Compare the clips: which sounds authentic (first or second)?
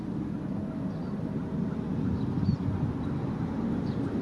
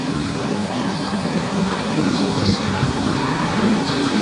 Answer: first